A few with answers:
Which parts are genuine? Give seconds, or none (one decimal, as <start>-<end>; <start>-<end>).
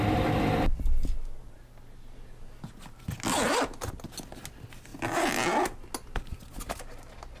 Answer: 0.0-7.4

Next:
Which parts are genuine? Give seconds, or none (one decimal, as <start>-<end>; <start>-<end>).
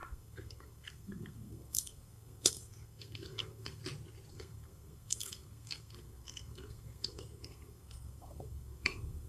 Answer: 3.8-4.3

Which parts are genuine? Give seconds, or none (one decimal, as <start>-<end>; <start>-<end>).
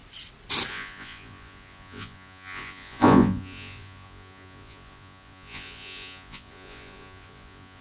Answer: 0.0-0.7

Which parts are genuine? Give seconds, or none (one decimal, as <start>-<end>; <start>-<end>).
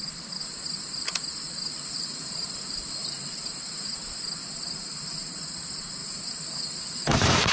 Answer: 0.0-1.7; 3.5-4.4; 5.4-6.0